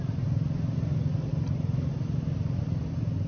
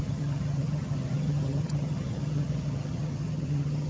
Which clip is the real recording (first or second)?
first